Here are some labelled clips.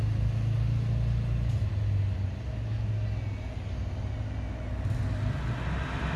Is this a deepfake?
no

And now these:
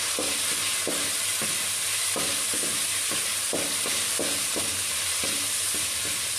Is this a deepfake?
no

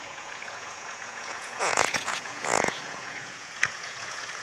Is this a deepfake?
yes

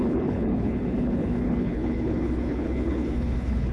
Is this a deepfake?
yes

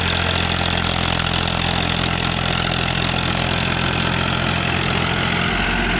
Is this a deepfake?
no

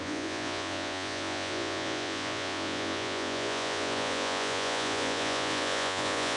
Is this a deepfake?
yes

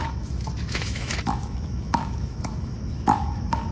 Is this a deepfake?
yes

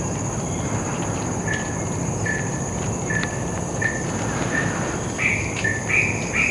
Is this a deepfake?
no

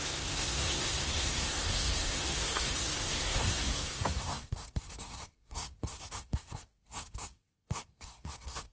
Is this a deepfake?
yes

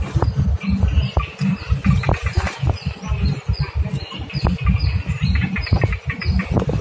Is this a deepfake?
no